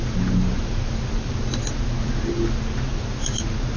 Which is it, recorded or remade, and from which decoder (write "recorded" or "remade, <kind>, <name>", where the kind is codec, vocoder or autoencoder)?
recorded